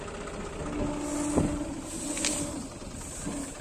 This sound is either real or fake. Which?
real